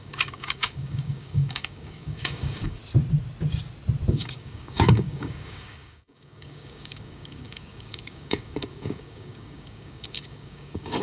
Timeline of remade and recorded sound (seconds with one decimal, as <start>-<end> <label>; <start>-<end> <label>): 0.0-2.8 remade; 2.8-4.1 recorded; 4.1-11.0 remade